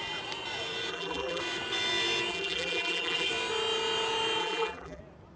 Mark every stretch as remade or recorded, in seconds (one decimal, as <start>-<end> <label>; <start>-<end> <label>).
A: 0.0-0.9 recorded; 0.9-1.4 remade; 1.4-2.3 recorded; 2.3-3.3 remade; 3.3-4.4 recorded; 4.4-5.0 remade; 5.0-5.4 recorded